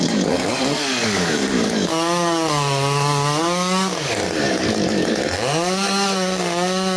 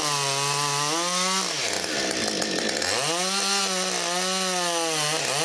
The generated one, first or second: first